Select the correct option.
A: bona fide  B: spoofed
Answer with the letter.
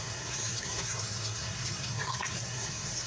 B